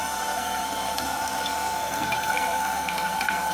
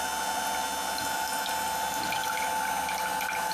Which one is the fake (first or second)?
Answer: first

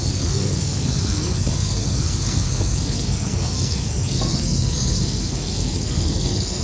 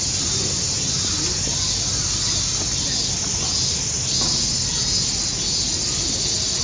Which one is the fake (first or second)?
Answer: first